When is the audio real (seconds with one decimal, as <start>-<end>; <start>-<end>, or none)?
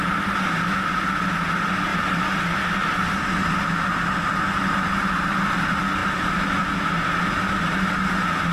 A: 0.0-8.5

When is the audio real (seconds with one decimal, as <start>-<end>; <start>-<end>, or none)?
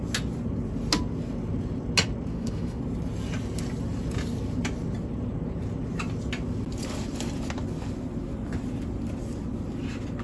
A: 0.0-2.3; 2.8-10.2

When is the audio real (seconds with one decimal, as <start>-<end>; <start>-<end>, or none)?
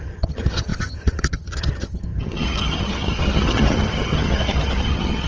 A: none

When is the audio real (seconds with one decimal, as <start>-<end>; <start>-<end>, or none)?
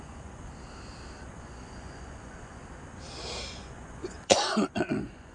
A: 0.5-1.3; 2.6-3.5